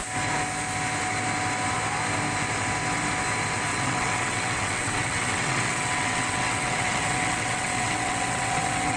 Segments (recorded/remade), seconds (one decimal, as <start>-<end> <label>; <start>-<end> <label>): 0.0-3.7 recorded; 3.7-9.0 remade